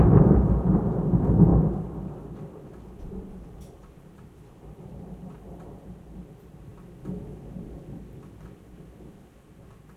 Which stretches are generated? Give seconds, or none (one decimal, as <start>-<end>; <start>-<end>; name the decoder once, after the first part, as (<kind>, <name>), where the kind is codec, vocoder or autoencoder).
0.0-1.5 (vocoder, BigVGAN v2); 3.0-6.7; 9.4-10.0